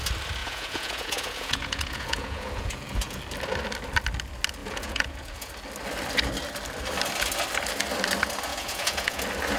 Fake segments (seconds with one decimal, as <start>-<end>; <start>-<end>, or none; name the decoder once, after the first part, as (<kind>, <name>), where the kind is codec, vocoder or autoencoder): 0.4-3.2 (vocoder, Vocos); 4.6-5.5; 8.5-9.2